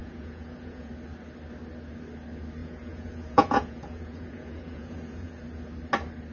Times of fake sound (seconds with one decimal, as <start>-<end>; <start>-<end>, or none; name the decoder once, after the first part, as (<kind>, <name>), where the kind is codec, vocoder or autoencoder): 0.0-0.9 (vocoder, Vocos); 2.6-5.4